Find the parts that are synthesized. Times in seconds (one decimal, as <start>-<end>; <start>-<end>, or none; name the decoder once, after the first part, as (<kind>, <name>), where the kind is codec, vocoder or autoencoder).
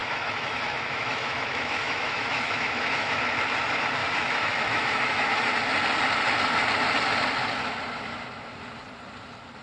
0.0-3.2 (autoencoder, DAC-VAE); 4.0-5.5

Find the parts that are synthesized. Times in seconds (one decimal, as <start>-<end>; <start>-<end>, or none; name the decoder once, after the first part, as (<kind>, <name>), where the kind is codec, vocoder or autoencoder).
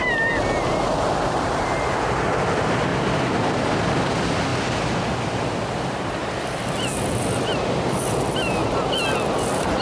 2.9-3.6 (vocoder, BigVGAN v2)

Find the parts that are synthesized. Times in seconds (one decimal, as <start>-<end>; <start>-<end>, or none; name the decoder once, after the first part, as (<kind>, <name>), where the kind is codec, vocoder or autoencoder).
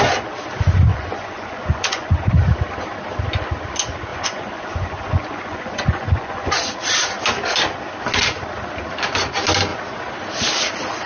0.9-2.3 (vocoder, Vocos); 4.1-6.5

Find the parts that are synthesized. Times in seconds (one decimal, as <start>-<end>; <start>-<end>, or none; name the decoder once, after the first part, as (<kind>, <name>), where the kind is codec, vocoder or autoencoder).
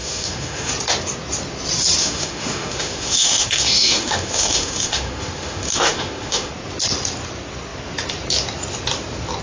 0.0-0.7 (autoencoder, DAC-VAE); 2.0-6.5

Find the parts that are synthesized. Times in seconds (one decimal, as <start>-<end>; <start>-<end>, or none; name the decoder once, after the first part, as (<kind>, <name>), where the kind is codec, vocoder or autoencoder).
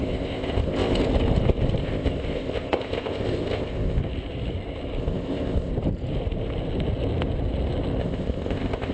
0.0-0.9 (codec, ZipCodec); 1.8-4.0; 5.0-5.7; 8.0-8.9